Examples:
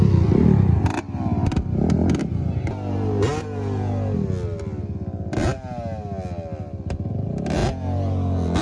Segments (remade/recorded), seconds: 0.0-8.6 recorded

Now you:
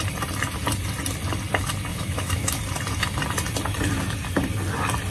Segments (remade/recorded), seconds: 0.0-1.9 recorded; 1.9-2.6 remade; 2.6-5.1 recorded

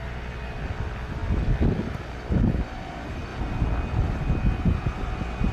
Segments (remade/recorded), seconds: 0.0-5.5 recorded

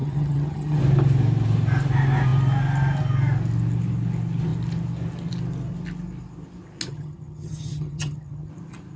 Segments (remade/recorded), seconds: 0.0-0.8 remade; 0.8-6.9 recorded; 6.9-8.5 remade; 8.5-9.0 recorded